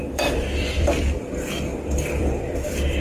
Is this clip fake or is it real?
fake